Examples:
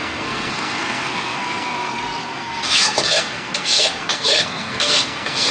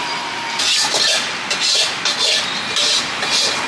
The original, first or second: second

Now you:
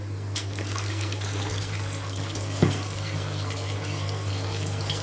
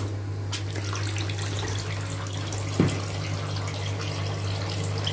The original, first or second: second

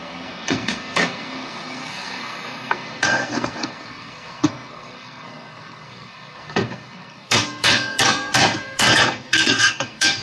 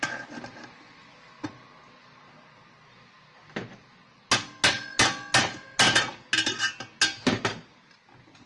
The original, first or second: second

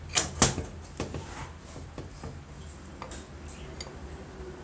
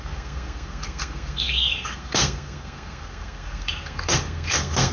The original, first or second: first